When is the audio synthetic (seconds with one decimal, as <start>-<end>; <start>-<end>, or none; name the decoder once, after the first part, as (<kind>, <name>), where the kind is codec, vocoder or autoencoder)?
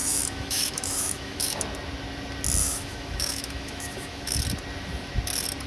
0.0-1.6 (autoencoder, DAC-VAE); 2.6-4.4